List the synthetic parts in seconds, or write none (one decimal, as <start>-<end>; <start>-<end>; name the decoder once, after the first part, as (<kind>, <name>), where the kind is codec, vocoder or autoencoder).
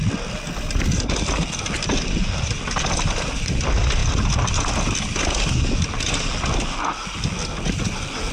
none